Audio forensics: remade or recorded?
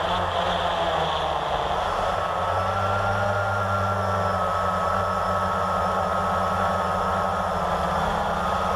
recorded